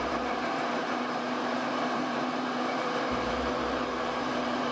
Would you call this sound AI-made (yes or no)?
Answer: yes